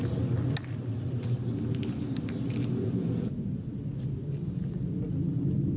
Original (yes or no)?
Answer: yes